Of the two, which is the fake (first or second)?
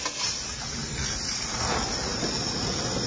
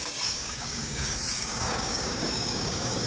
second